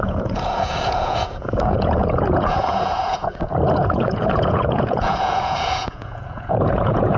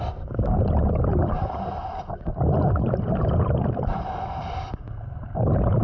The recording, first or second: second